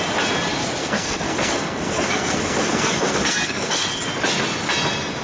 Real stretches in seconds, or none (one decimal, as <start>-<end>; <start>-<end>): 0.0-0.8; 3.9-5.2